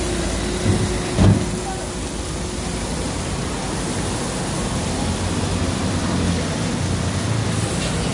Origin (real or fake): real